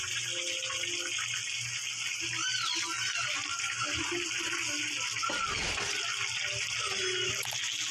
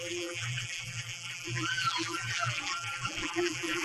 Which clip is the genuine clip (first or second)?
first